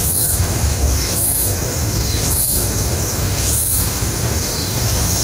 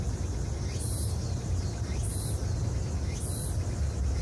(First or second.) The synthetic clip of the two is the first